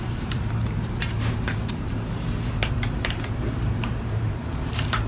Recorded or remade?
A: remade